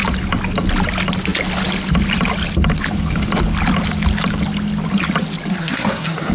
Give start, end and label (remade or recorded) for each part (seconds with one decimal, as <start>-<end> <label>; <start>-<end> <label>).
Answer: 0.0-5.5 recorded; 5.5-6.3 remade